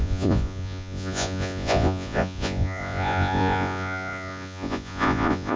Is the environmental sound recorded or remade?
remade